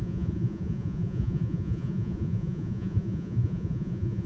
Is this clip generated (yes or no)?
yes